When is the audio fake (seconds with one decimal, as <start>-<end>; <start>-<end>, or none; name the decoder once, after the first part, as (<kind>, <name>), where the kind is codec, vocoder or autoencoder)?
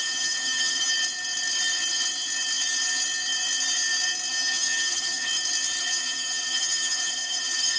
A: 0.0-0.9 (vocoder, HiFi-GAN); 4.3-5.3; 5.8-7.8